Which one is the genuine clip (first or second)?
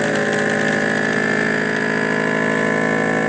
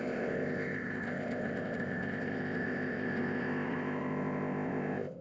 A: first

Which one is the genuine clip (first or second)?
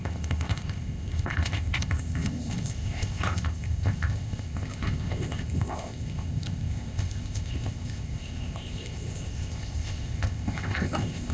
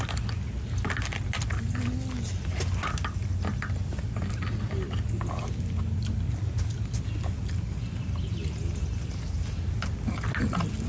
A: second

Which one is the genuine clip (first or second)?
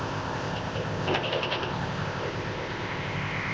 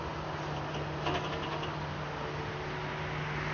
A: second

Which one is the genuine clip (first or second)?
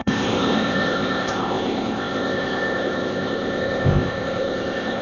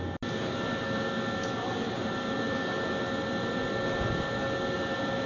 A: second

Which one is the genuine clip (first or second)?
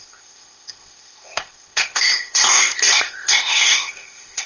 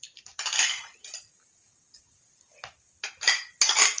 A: second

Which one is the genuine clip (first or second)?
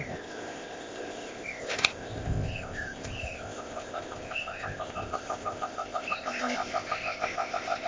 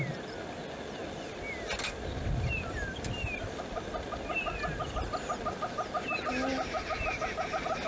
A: second